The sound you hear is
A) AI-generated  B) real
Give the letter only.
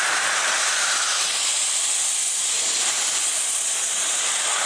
B